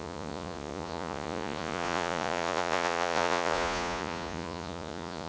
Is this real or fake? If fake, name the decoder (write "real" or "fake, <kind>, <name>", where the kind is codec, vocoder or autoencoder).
fake, vocoder, Vocos